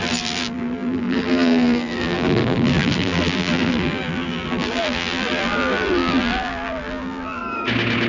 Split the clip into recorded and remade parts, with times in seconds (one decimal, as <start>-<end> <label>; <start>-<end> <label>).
0.0-7.4 remade; 7.4-8.1 recorded